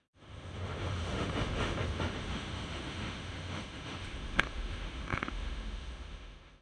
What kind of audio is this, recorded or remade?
remade